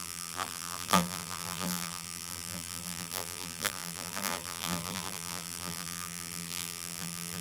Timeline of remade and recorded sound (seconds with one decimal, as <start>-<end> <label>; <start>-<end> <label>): 0.0-7.4 remade

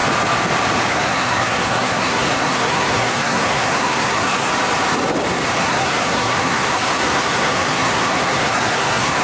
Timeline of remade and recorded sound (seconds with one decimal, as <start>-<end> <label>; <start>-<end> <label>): 0.0-0.9 recorded; 0.9-4.5 remade; 4.5-5.6 recorded; 5.6-9.2 remade

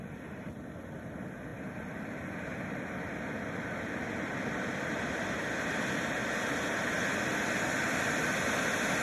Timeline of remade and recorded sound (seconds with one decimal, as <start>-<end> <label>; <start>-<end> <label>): 0.0-9.0 recorded